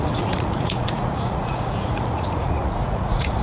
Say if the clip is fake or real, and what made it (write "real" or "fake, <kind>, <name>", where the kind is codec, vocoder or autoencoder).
fake, vocoder, Vocos